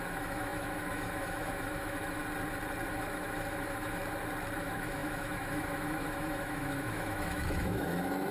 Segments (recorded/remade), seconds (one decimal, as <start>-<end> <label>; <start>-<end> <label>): 0.0-2.2 remade; 2.2-2.9 recorded; 2.9-4.0 remade; 4.0-4.6 recorded; 4.6-8.3 remade